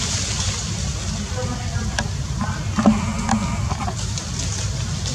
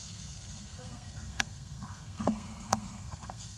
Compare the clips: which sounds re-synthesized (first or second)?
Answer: second